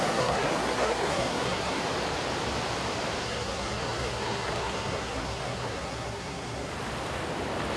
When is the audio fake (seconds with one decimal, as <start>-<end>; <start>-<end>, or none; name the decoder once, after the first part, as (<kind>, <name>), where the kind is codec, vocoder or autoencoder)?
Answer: 0.0-1.8 (codec, SNAC); 3.2-6.7